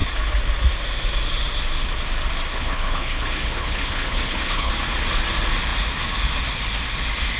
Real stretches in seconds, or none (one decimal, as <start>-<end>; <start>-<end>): 0.0-2.5; 4.7-7.4